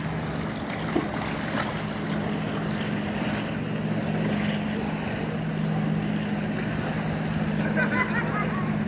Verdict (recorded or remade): recorded